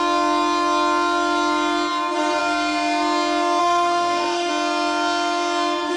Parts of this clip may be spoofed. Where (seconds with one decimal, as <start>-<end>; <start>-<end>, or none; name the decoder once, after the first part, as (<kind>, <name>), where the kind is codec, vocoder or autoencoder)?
3.6-4.5 (autoencoder, DAC-VAE)